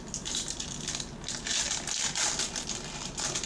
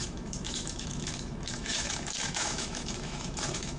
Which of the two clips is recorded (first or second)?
first